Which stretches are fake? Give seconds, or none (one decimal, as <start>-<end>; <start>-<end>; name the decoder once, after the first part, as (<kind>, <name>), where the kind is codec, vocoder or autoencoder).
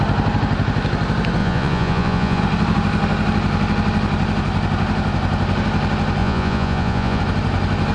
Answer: 1.4-2.4 (vocoder, Vocos); 6.2-7.2